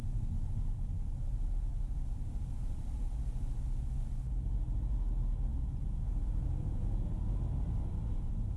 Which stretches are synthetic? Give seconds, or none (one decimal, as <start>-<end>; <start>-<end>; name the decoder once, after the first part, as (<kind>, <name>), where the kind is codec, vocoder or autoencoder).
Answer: 5.5-7.1 (vocoder, Vocos)